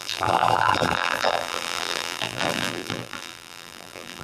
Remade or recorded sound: remade